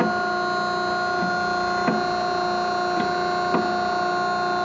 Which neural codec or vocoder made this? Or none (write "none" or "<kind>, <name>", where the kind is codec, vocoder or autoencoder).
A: none